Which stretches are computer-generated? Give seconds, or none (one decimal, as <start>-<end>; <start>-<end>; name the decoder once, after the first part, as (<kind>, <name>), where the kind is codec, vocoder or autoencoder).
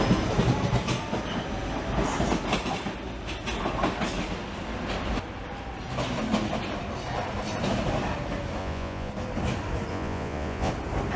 8.6-9.1 (vocoder, Vocos); 9.9-10.7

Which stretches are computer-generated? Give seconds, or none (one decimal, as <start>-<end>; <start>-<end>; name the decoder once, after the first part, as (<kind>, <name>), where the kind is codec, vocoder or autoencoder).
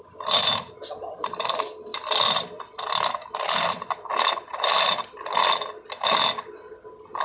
4.5-5.2 (vocoder, BigVGAN v2)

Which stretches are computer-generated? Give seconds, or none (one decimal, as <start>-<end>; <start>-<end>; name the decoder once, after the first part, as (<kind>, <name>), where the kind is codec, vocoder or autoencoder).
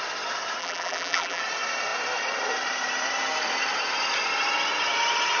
0.6-1.4 (vocoder, BigVGAN v2)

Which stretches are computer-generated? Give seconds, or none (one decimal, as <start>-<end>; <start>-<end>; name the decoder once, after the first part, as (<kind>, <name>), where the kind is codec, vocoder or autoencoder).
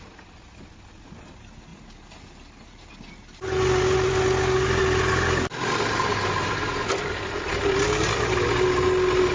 none